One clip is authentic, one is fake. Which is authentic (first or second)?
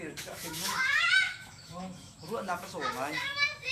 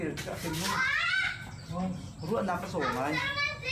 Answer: second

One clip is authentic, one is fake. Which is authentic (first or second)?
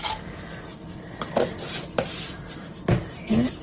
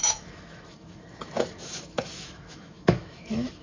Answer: first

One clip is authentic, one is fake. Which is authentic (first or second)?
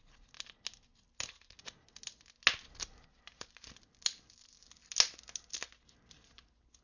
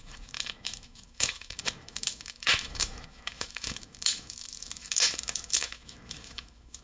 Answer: first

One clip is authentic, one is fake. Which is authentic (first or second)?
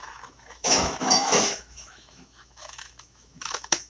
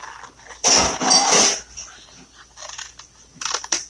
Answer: second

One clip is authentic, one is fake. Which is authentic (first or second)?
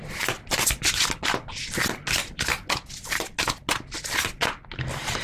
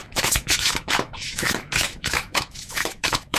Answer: first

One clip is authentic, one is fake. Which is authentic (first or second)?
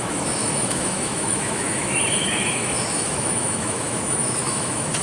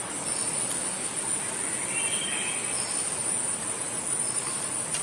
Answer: second